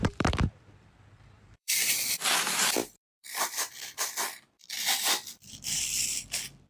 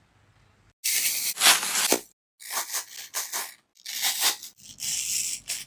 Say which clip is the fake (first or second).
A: first